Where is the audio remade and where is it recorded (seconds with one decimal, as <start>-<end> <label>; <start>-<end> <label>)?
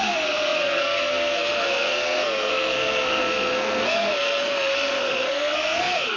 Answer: 0.0-6.2 remade